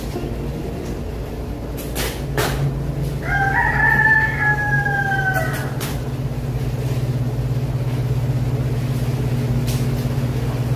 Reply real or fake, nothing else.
real